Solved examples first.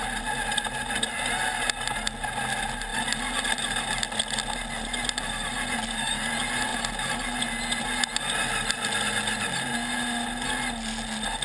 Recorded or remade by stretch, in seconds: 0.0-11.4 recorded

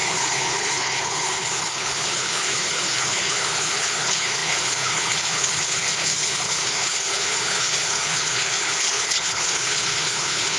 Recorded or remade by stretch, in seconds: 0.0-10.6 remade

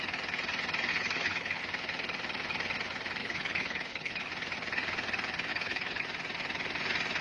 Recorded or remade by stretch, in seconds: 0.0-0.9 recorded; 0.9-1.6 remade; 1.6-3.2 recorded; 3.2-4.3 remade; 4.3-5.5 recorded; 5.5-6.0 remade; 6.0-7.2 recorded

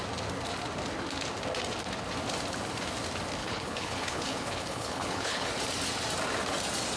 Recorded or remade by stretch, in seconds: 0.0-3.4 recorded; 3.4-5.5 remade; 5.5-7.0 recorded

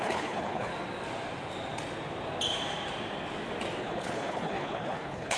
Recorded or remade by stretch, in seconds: 0.0-0.7 remade; 0.7-3.8 recorded; 3.8-5.4 remade

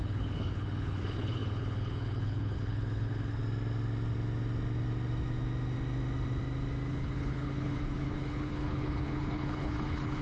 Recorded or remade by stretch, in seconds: 0.0-3.4 remade; 3.4-6.9 recorded; 6.9-10.2 remade

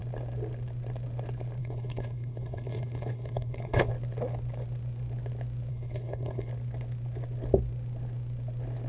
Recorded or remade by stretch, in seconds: 0.0-1.6 recorded; 1.6-3.9 remade; 3.9-5.7 recorded; 5.7-6.5 remade; 6.5-8.9 recorded

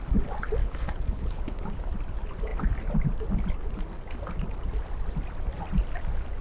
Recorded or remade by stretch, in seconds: 0.0-0.6 recorded; 0.6-1.8 remade; 1.8-6.4 recorded